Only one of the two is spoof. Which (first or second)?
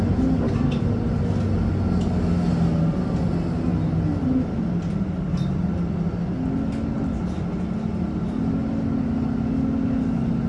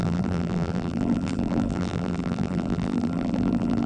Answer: second